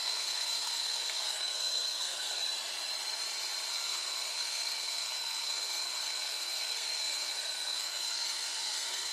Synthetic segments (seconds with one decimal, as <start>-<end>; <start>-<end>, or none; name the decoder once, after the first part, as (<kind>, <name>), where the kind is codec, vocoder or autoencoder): 0.0-2.4 (codec, SNAC); 3.7-9.1